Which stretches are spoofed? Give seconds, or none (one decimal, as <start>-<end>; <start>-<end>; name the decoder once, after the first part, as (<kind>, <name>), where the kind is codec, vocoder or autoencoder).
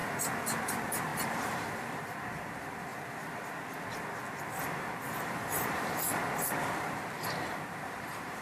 0.6-2.9 (vocoder, BigVGAN v2); 4.3-8.4